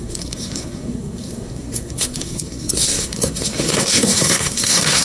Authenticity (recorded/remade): remade